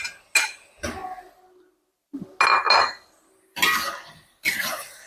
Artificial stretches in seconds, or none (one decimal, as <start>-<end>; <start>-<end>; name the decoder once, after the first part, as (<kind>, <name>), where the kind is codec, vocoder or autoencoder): none